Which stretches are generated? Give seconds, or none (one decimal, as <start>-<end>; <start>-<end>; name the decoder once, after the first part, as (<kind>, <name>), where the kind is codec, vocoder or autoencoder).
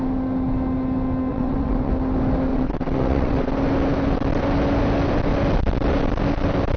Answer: 1.3-1.9 (vocoder, WaveNeXt); 2.5-3.5